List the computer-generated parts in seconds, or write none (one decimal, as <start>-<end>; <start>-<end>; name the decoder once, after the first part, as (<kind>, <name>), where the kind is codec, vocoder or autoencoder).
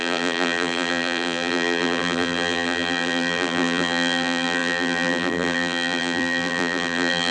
0.0-7.3 (vocoder, BigVGAN v2)